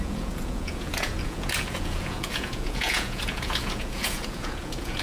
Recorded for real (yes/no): no